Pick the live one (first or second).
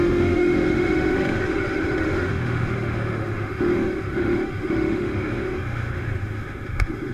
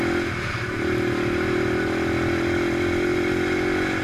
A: second